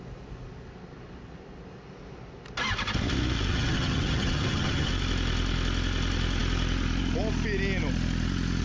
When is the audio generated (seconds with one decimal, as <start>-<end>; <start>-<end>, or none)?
3.5-4.9